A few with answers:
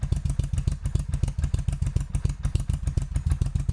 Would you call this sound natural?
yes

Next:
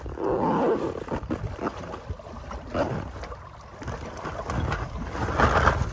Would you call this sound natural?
yes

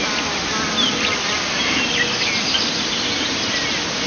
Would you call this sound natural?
yes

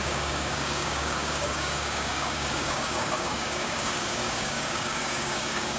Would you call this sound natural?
no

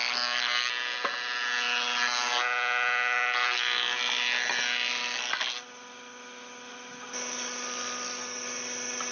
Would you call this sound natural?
yes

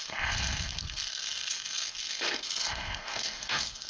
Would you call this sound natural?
no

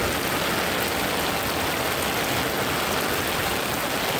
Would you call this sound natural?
yes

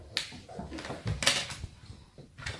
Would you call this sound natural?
yes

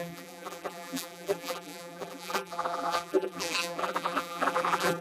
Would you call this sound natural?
no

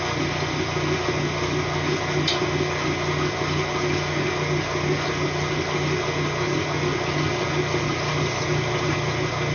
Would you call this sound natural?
yes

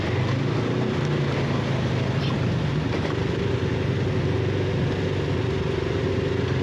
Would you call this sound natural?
yes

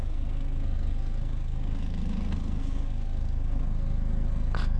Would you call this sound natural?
no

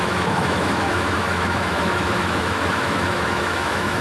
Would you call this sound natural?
no